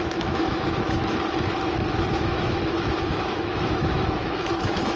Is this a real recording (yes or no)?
no